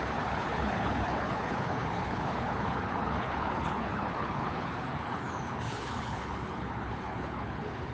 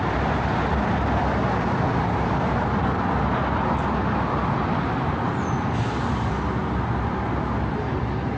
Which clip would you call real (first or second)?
second